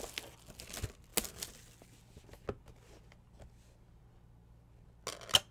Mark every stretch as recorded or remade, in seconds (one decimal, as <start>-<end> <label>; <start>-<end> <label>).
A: 0.0-5.5 recorded